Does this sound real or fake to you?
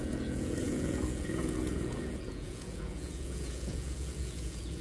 fake